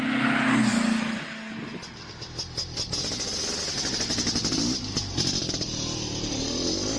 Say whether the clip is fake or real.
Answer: real